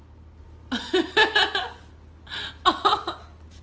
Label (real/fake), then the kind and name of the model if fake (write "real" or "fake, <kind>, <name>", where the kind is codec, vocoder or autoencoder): real